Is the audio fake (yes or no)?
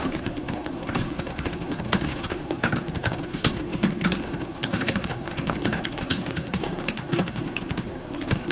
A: yes